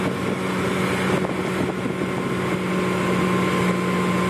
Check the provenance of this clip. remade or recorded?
recorded